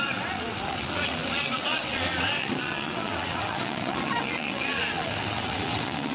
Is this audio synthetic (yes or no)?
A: yes